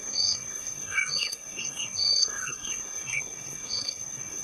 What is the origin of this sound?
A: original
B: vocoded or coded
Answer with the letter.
B